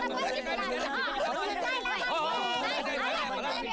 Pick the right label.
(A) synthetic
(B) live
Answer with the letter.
B